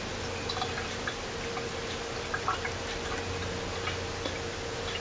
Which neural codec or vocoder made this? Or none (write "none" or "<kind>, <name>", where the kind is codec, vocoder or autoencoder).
none